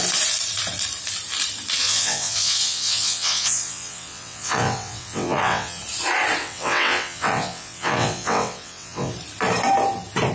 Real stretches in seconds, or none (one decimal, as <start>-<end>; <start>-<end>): 0.0-1.8; 5.8-6.4; 9.1-10.3

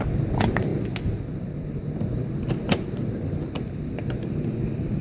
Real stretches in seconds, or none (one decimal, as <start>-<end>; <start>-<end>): 0.0-5.0

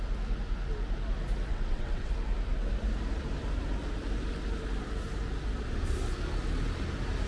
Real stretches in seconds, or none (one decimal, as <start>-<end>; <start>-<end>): 0.0-1.5; 2.1-7.3